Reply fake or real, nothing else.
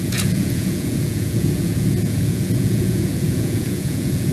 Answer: fake